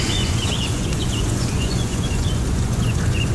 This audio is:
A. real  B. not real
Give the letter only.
B